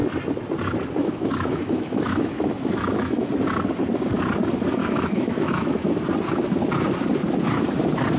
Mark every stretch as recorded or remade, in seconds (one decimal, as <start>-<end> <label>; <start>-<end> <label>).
0.0-1.0 recorded; 1.0-3.3 remade; 3.3-4.8 recorded; 4.8-5.9 remade; 5.9-8.2 recorded